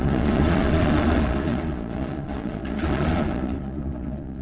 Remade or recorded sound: remade